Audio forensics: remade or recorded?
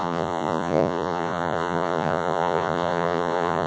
remade